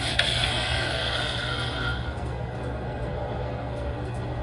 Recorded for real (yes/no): no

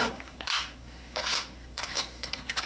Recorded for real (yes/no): no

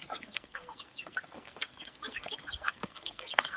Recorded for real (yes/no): no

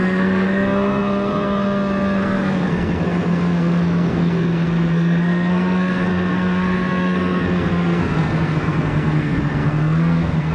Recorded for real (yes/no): no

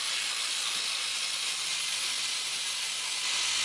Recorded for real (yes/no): yes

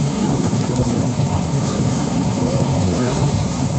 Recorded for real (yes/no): no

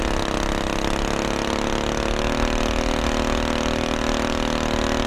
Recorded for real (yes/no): yes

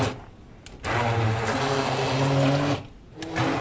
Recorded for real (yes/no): yes